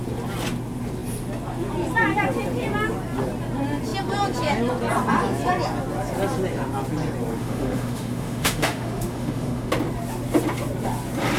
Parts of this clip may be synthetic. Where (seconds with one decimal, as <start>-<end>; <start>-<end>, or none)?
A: 7.4-9.7